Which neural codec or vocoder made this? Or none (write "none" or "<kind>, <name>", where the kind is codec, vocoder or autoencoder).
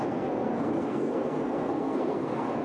codec, SNAC